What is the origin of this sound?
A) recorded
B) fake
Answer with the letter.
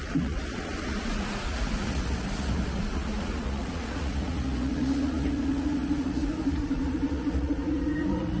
B